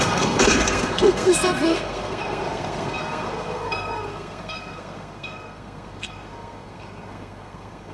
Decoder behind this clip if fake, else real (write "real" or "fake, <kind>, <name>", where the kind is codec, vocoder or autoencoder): fake, codec, SNAC